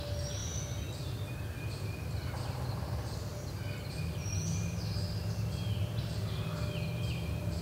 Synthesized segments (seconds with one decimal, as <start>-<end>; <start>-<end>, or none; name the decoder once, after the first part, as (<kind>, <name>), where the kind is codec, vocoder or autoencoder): none